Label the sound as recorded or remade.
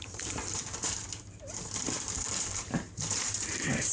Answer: remade